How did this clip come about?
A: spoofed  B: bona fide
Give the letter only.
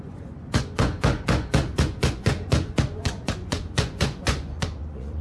A